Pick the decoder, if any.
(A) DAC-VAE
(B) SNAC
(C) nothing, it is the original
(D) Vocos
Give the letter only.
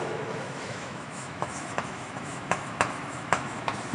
A